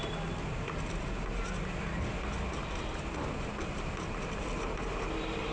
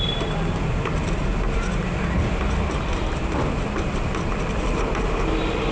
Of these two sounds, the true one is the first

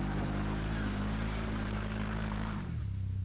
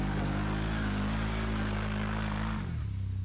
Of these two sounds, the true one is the second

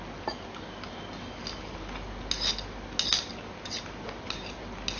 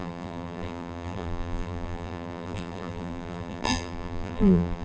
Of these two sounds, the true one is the first